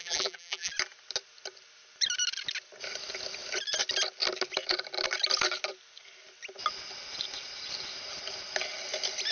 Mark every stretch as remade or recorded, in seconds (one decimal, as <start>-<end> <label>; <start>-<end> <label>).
0.0-0.7 remade; 0.7-9.3 recorded